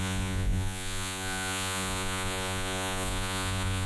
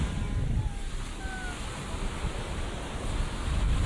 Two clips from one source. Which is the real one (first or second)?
second